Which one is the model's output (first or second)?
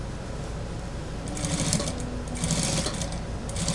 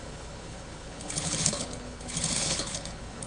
second